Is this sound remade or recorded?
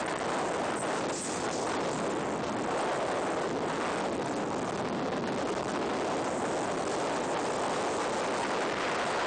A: recorded